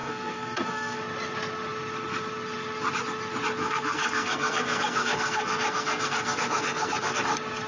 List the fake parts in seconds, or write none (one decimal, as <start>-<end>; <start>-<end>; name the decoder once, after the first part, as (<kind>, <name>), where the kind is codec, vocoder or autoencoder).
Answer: 0.0-1.0 (codec, SNAC); 3.6-7.2